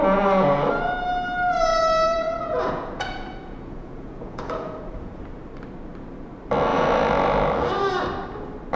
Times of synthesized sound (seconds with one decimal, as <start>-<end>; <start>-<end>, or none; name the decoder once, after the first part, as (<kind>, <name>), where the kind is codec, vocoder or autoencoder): 1.7-5.2 (vocoder, Vocos); 6.7-7.5